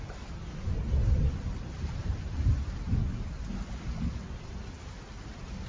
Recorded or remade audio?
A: recorded